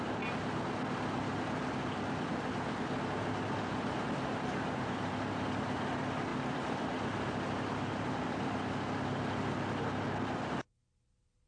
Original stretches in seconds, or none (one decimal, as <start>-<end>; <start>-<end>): 0.0-11.5